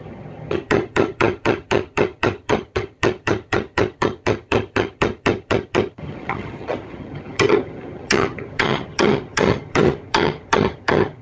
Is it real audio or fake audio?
fake